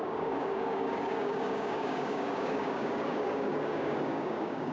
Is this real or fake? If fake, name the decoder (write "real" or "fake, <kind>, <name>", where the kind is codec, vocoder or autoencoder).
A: fake, codec, DAC